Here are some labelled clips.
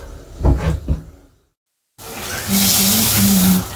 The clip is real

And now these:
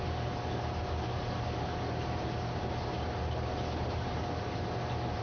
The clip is real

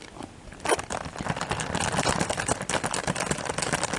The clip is real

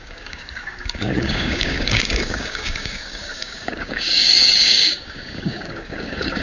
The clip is fake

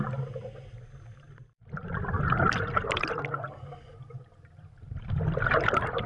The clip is real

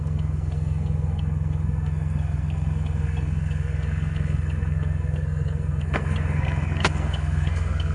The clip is fake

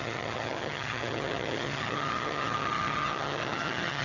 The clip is fake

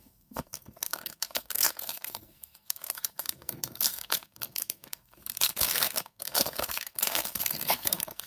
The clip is fake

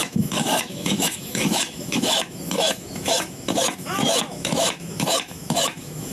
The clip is fake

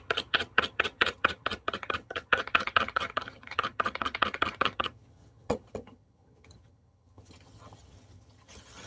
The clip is fake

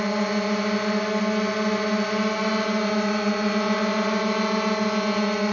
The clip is real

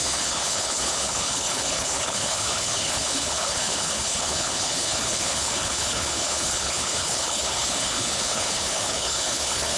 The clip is fake